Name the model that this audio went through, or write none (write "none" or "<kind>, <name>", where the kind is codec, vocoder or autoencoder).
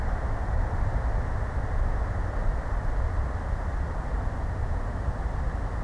none